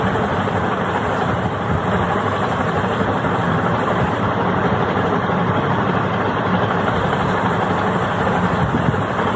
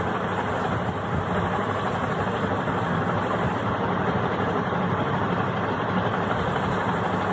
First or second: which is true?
second